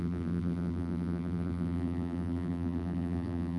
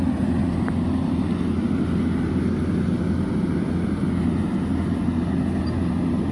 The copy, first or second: first